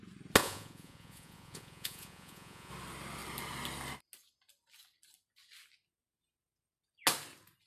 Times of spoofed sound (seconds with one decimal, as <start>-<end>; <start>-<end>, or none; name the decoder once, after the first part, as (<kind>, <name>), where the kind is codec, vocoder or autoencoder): 0.4-2.7 (vocoder, Vocos)